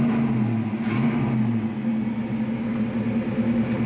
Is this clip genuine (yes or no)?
yes